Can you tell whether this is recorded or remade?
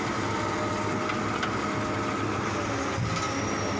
recorded